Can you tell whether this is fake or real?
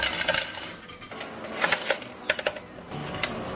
real